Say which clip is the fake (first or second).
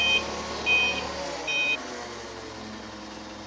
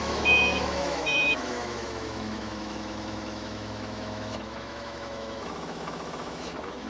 second